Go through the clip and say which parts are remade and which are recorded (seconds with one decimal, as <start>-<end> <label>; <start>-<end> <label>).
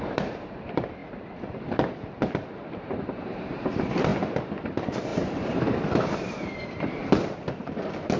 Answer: 0.0-4.1 remade; 4.1-4.6 recorded; 4.6-7.0 remade; 7.0-8.2 recorded